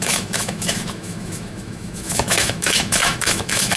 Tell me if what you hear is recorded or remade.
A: remade